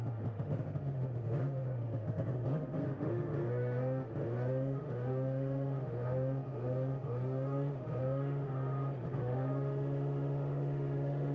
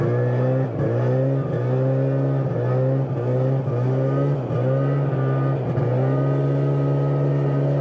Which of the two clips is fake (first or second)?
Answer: first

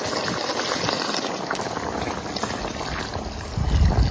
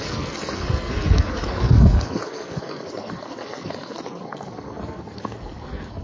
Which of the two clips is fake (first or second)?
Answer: second